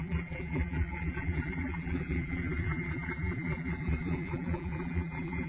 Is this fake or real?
fake